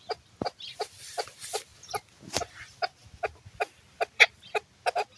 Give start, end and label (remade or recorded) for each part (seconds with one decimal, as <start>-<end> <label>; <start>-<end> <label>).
0.0-1.7 remade; 1.7-2.3 recorded; 2.3-5.2 remade